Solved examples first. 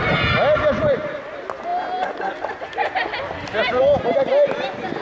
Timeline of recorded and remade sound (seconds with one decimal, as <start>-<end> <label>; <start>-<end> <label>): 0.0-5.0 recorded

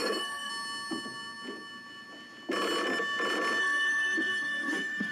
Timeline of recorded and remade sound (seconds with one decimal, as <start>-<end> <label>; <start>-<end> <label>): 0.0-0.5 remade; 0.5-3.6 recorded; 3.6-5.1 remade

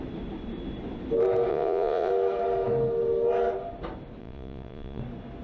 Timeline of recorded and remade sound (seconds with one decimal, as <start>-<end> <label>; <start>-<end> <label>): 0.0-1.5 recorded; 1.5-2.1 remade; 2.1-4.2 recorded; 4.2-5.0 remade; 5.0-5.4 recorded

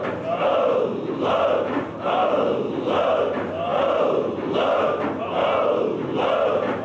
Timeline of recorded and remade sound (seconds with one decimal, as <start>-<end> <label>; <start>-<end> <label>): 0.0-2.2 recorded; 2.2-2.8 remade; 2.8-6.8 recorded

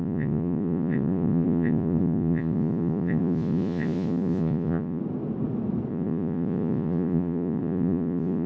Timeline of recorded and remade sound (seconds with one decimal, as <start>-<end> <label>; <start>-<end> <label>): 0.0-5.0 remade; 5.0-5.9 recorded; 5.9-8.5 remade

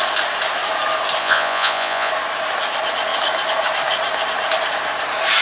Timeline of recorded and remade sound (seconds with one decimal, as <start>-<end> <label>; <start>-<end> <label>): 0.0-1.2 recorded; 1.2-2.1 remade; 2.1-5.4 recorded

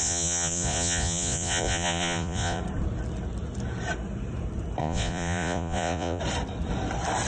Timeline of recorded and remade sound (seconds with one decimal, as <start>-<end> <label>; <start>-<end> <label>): 0.0-2.6 remade; 2.6-4.8 recorded; 4.8-6.2 remade; 6.2-7.3 recorded

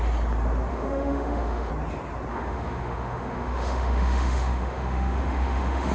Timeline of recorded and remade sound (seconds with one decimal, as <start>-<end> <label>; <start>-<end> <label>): 0.0-0.7 recorded; 0.7-1.7 remade; 1.7-2.3 recorded; 2.3-5.9 remade